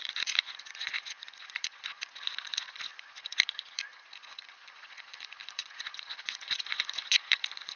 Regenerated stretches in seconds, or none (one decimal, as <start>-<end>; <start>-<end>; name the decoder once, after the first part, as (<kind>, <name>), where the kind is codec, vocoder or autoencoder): 0.0-7.8 (vocoder, Vocos)